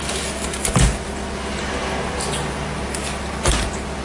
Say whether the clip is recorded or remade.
recorded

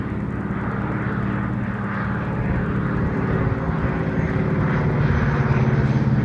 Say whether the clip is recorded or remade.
recorded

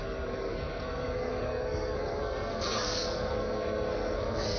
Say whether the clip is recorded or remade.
remade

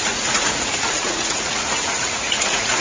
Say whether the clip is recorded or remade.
remade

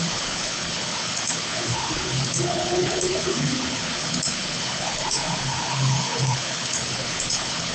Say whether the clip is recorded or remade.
remade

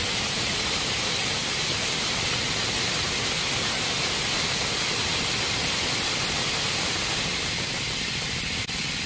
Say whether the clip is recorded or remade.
recorded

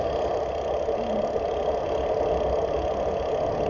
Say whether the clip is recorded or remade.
recorded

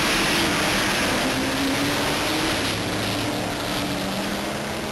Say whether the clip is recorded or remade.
recorded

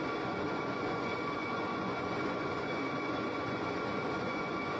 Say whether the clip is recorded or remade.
remade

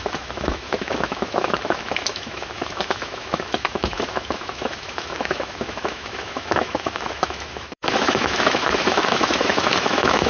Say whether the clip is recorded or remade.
remade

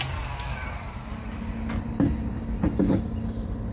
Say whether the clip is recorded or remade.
recorded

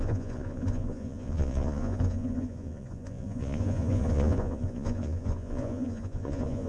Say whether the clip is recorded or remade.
remade